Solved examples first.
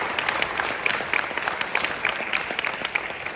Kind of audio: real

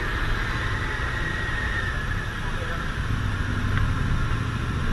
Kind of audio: real